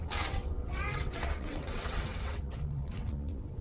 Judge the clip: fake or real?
fake